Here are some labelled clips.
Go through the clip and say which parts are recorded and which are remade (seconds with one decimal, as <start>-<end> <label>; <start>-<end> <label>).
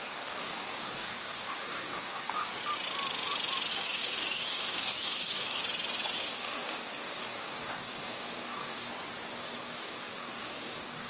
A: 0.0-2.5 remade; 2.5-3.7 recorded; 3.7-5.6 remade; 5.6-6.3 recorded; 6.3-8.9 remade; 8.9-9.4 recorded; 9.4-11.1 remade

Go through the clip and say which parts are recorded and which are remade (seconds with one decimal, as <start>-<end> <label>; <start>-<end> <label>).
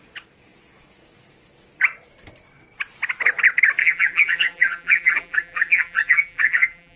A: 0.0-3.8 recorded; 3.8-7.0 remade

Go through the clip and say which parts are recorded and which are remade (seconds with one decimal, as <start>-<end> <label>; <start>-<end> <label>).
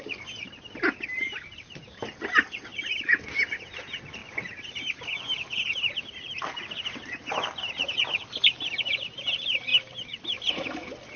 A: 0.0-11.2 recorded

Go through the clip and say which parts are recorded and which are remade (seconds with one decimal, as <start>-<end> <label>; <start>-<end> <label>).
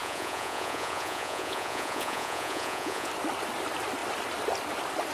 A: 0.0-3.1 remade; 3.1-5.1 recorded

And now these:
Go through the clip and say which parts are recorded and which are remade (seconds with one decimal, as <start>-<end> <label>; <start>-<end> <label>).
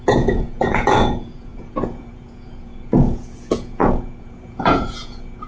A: 0.0-5.5 remade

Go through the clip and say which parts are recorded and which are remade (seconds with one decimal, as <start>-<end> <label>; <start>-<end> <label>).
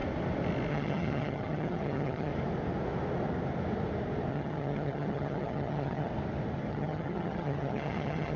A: 0.0-0.7 recorded; 0.7-2.3 remade; 2.3-4.3 recorded; 4.3-6.1 remade; 6.1-6.7 recorded; 6.7-8.4 remade